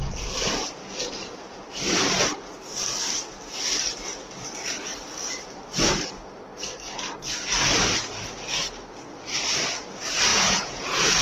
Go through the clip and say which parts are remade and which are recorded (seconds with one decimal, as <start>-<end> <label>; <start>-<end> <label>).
0.0-10.3 recorded; 10.3-11.2 remade